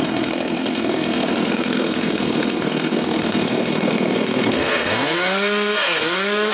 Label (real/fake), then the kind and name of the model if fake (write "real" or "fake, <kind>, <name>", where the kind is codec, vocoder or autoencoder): fake, codec, SNAC